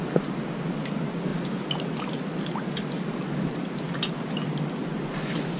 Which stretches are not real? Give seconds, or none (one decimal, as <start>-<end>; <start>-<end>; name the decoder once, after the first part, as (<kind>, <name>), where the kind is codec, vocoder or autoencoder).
none